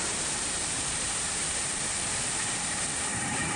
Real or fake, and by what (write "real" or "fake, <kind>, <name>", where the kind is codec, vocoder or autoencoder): fake, vocoder, BigVGAN v2